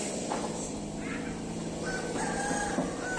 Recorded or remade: recorded